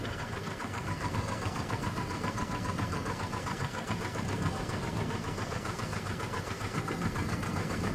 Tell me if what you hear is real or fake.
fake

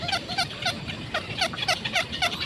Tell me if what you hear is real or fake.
fake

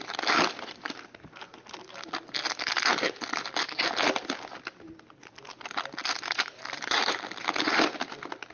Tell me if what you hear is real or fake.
real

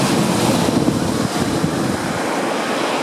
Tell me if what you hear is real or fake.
real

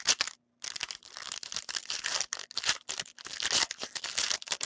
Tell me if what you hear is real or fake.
real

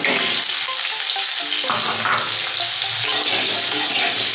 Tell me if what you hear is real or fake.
real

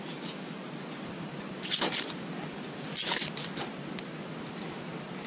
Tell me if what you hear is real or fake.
real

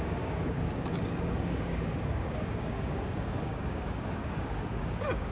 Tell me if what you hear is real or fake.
fake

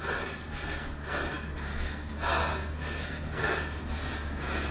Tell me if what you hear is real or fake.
fake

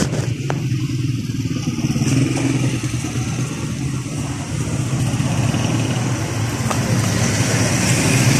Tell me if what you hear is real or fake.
real